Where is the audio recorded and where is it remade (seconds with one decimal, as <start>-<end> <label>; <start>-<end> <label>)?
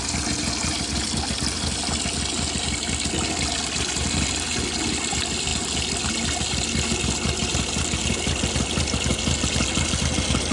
0.0-10.5 recorded